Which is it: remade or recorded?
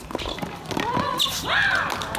recorded